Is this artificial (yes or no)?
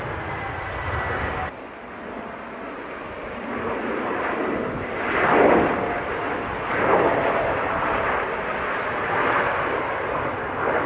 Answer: no